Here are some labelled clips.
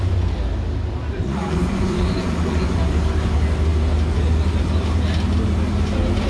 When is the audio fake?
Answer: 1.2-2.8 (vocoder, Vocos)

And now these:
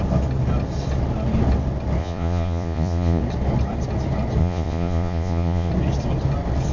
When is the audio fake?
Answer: 2.0-3.2 (vocoder, Vocos); 4.4-5.7

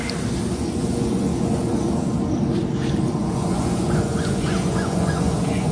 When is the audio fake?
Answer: 0.5-1.9 (vocoder, Vocos); 3.2-5.7

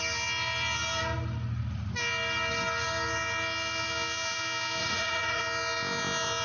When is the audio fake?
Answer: 4.8-5.4 (vocoder, Vocos)

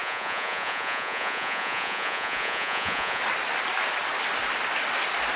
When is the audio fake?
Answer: 0.0-3.2 (vocoder, Vocos)

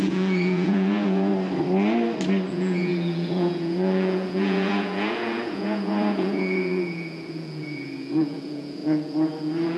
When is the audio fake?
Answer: 0.0-1.3 (vocoder, Vocos); 2.5-9.8

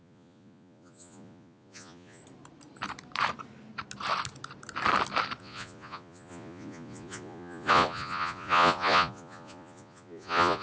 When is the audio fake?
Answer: 0.0-2.2 (vocoder, Vocos); 5.4-10.6

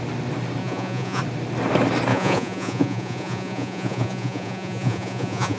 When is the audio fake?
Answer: 0.6-1.2 (vocoder, Vocos); 2.1-5.6